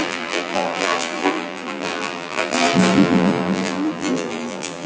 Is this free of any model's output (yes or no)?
no